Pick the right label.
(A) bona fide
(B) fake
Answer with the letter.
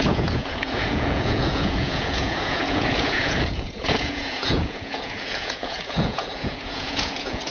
B